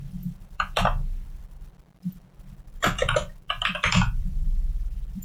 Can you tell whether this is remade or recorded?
remade